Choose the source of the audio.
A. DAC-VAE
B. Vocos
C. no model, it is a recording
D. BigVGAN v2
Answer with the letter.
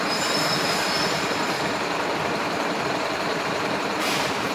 D